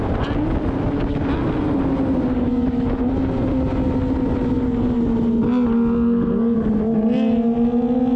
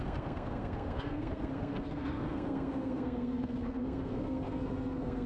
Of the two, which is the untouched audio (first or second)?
first